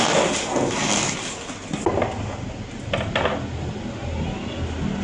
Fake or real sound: real